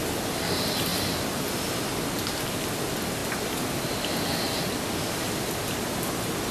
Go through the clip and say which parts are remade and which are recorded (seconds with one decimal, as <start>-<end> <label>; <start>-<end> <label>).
0.0-6.5 recorded